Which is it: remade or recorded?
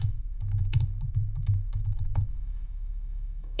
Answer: remade